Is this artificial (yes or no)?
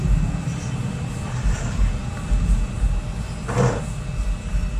no